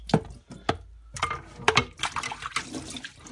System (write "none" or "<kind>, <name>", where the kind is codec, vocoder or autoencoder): none